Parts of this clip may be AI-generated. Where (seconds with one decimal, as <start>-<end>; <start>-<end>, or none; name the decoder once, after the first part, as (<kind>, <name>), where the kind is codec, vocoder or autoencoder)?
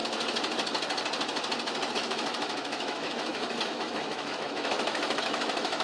1.9-5.8 (autoencoder, DAC-VAE)